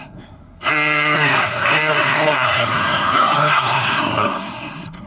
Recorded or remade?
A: remade